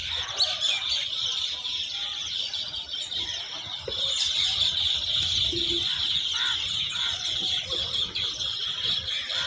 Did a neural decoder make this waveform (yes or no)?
yes